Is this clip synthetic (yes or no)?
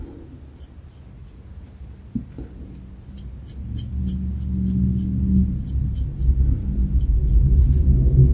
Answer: no